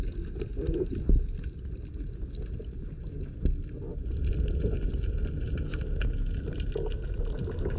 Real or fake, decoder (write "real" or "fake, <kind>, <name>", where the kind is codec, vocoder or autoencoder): real